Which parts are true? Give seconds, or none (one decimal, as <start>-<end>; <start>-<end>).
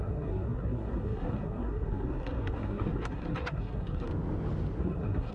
4.1-4.8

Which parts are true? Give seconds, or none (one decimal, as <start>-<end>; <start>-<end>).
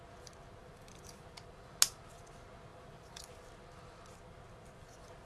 0.0-0.6; 1.2-2.7; 3.2-5.3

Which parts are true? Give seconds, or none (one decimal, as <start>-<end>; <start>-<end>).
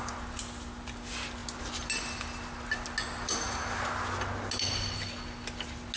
0.0-6.0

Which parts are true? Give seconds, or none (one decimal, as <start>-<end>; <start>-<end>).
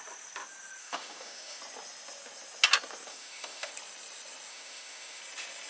0.0-0.8; 1.6-3.1; 3.7-4.5; 5.2-5.7